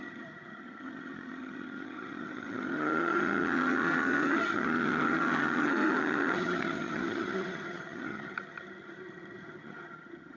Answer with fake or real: fake